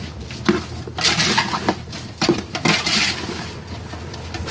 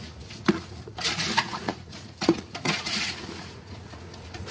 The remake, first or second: second